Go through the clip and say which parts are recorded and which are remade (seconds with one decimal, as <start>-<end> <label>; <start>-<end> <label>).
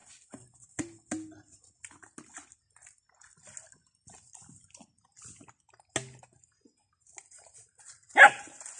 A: 0.0-8.8 recorded